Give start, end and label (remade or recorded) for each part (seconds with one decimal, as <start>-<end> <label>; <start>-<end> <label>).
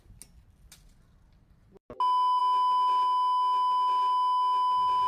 0.0-5.1 recorded